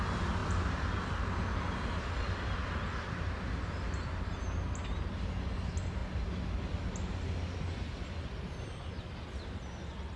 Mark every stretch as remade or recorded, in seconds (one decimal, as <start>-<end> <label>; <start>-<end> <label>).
0.0-10.2 recorded